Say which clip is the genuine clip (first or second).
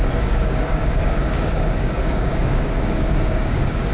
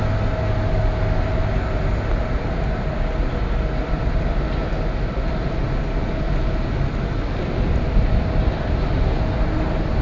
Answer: second